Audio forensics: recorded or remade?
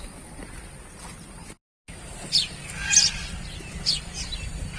recorded